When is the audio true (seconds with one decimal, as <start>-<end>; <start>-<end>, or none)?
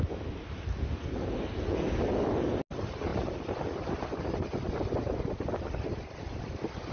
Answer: 0.0-6.9